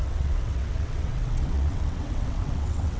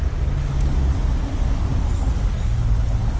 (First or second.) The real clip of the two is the second